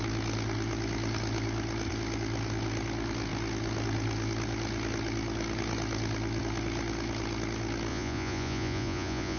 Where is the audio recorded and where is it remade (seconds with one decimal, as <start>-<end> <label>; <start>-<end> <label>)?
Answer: 0.0-7.9 recorded; 7.9-9.4 remade